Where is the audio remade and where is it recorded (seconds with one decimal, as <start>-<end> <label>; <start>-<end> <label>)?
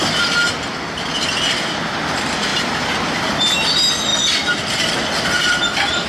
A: 0.0-6.1 recorded